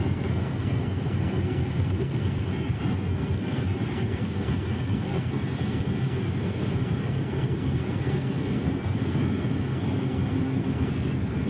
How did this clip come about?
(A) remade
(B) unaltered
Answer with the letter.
A